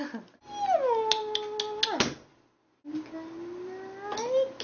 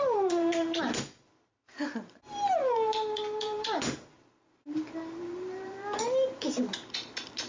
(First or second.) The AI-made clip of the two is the second